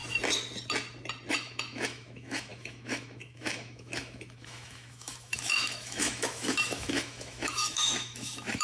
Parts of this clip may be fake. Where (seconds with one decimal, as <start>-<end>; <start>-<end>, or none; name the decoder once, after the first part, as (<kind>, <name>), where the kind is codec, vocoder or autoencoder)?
1.3-8.6 (autoencoder, DAC-VAE)